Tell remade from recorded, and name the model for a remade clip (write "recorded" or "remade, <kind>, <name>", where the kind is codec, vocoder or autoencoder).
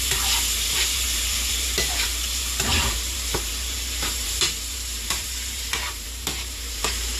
remade, vocoder, BigVGAN v2